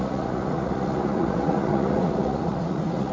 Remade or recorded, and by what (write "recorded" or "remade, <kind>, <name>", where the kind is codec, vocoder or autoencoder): remade, vocoder, Vocos